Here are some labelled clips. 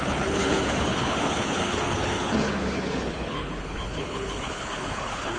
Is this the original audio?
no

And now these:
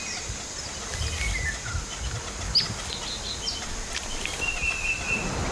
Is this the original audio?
yes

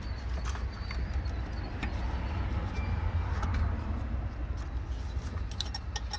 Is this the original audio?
yes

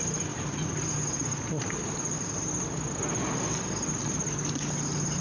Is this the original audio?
yes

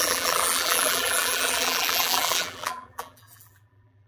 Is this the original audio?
no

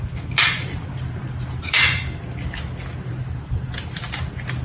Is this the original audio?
yes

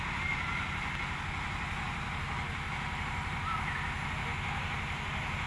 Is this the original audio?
yes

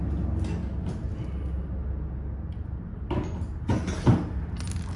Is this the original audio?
yes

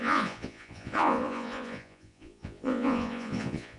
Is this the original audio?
no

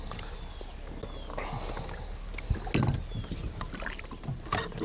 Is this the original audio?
yes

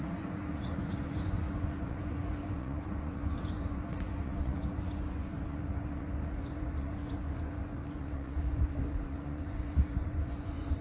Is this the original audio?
no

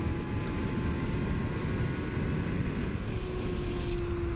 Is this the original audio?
yes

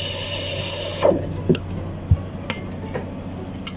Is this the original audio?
yes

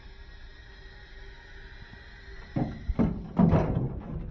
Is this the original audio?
yes